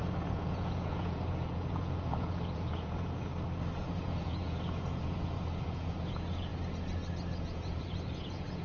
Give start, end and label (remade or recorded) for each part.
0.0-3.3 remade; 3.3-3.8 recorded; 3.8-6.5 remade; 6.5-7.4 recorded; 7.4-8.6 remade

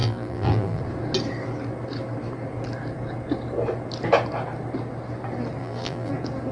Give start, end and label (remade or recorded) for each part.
0.0-0.8 remade; 0.8-5.6 recorded; 5.6-6.1 remade; 6.1-6.5 recorded

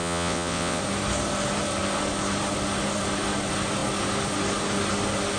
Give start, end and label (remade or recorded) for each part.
0.0-0.8 remade; 0.8-5.4 recorded

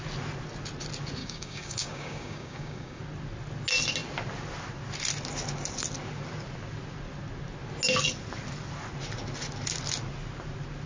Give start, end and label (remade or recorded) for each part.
0.0-1.2 recorded; 1.2-3.0 remade; 3.0-10.9 recorded

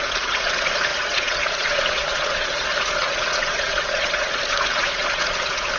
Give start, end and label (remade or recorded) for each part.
0.0-5.8 remade